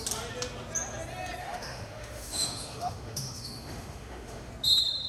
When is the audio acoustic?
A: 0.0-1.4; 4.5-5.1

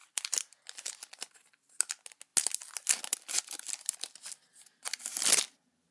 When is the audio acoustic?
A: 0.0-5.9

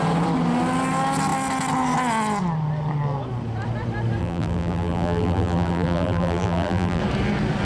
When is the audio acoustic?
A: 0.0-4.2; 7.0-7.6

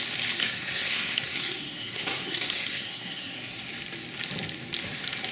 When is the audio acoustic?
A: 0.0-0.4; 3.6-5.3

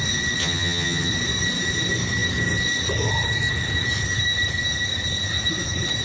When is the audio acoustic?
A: 0.0-0.4; 1.1-6.0

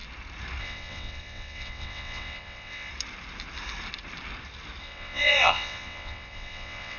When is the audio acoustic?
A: 0.0-0.6; 2.9-4.8